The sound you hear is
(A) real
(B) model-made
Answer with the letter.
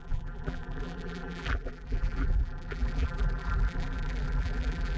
B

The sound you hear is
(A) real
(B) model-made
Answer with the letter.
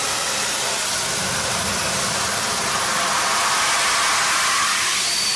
A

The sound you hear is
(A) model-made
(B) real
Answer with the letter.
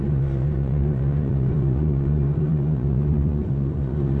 A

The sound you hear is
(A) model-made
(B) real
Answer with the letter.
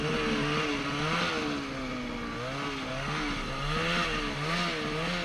B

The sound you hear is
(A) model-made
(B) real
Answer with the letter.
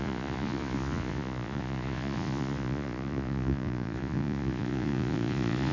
A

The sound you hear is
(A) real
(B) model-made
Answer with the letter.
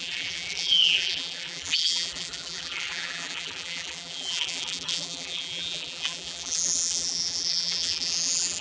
B